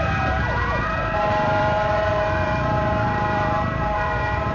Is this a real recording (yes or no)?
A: no